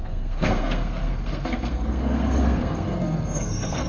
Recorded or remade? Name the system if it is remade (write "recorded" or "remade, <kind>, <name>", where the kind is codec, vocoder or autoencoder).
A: remade, codec, SNAC